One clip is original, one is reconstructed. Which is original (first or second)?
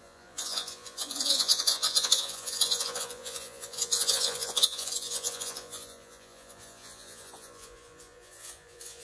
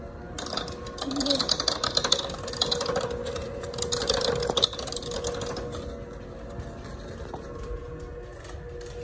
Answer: second